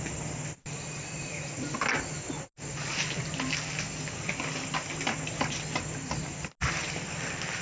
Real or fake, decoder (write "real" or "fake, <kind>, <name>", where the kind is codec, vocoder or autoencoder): real